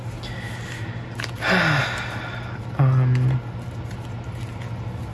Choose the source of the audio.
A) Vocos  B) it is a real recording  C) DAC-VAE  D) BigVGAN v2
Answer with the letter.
B